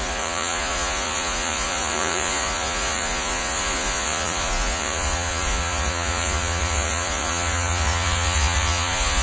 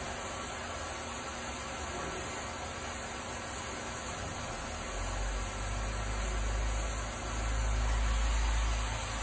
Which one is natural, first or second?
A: second